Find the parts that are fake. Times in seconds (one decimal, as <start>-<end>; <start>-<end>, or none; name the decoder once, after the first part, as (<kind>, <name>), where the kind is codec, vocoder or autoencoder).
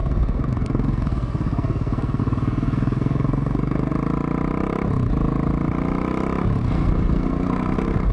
0.0-3.9 (codec, SNAC); 6.6-8.1